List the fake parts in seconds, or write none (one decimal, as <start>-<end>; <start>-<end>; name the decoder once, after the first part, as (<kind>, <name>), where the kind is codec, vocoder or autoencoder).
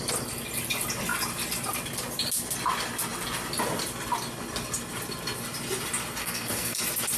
6.2-6.8 (codec, SNAC)